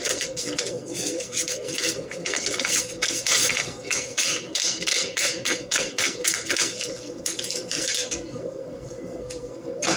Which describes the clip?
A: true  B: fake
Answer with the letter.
B